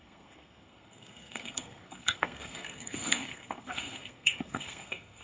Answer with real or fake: fake